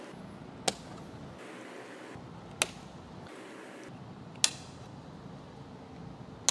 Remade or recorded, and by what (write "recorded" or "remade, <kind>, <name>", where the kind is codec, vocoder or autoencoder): recorded